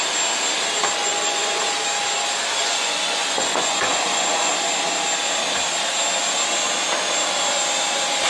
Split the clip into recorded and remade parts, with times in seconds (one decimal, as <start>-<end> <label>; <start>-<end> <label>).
0.0-1.0 recorded; 1.0-1.6 remade; 1.6-2.6 recorded; 2.6-4.5 remade; 4.5-8.3 recorded